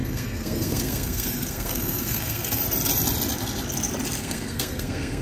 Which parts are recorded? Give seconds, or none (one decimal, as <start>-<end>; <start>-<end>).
2.6-4.2